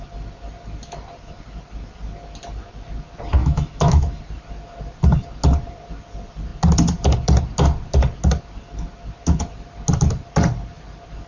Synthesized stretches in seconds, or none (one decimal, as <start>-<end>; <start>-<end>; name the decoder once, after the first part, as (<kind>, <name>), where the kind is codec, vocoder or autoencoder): 3.4-4.2 (autoencoder, DAC-VAE)

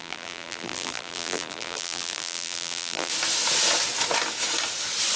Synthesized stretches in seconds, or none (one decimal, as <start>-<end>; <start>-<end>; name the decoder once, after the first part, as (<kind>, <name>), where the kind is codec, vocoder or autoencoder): 0.0-3.1 (vocoder, BigVGAN v2)